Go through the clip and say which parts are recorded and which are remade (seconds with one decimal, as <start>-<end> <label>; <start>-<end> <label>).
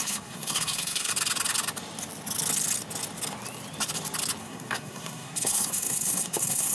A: 0.0-1.1 remade; 1.1-4.4 recorded; 4.4-6.7 remade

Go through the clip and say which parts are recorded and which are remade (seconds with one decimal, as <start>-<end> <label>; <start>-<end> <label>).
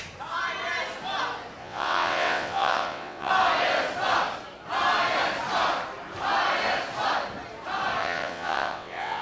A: 0.0-1.6 recorded; 1.6-3.3 remade; 3.3-8.0 recorded; 8.0-9.2 remade